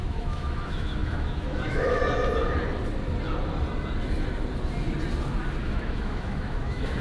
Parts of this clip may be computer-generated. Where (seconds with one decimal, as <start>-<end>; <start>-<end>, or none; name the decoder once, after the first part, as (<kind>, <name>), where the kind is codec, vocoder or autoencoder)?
0.0-2.0 (autoencoder, DAC-VAE); 5.6-7.0